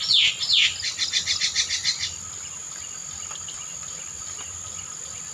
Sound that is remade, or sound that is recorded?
recorded